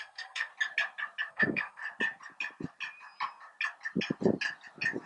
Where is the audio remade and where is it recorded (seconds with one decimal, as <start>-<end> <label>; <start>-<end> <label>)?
0.0-0.5 remade; 0.5-1.3 recorded; 1.3-1.8 remade; 1.8-5.1 recorded